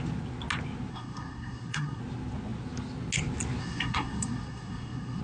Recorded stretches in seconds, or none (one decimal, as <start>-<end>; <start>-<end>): 0.0-0.9; 2.0-3.6